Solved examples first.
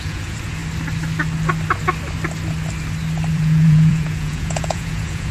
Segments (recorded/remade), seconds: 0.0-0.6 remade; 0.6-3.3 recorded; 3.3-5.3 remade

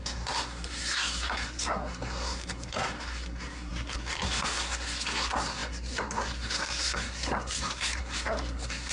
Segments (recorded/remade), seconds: 0.0-8.9 remade

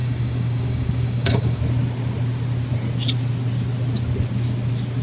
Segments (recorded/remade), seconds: 0.0-1.6 remade; 1.6-5.0 recorded

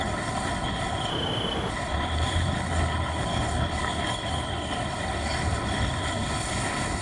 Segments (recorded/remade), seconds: 0.0-1.1 remade; 1.1-1.7 recorded; 1.7-7.0 remade

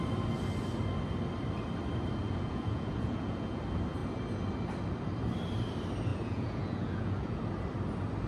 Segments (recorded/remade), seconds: 0.0-2.2 recorded; 2.2-3.6 remade; 3.6-6.1 recorded; 6.1-7.4 remade; 7.4-8.3 recorded

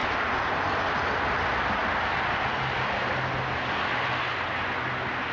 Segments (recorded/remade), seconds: 0.0-5.3 recorded

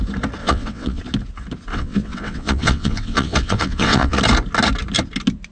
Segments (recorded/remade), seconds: 0.0-0.4 recorded; 0.4-1.0 remade; 1.0-1.7 recorded; 1.7-4.2 remade; 4.2-5.5 recorded

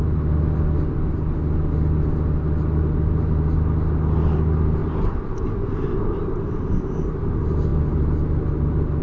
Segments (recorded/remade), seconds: 0.0-9.0 recorded